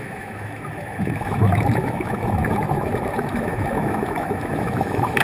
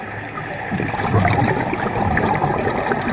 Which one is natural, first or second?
second